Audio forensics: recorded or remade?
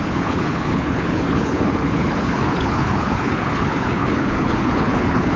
remade